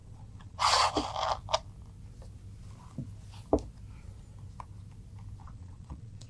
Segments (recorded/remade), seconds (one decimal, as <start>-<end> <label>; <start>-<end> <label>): 0.0-0.9 remade; 0.9-5.4 recorded; 5.4-6.3 remade